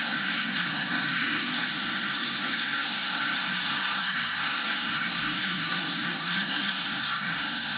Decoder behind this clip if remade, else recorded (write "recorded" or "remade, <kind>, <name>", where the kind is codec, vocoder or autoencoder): remade, codec, SNAC